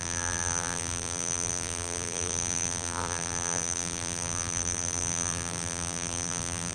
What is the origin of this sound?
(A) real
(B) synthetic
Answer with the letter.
B